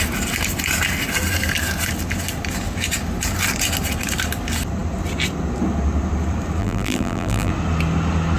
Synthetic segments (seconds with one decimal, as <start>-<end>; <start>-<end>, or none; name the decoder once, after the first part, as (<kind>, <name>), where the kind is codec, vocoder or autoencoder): 6.6-7.5 (vocoder, BigVGAN v2)